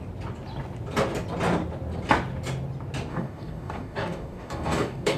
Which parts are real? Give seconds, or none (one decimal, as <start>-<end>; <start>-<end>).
0.0-3.1